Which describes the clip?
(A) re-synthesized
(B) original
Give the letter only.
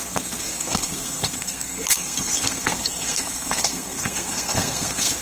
A